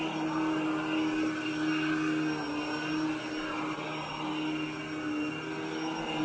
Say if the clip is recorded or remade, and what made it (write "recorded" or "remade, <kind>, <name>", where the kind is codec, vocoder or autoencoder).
recorded